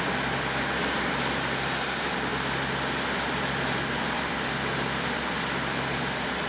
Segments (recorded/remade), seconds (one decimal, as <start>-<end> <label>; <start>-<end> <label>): 0.0-6.5 recorded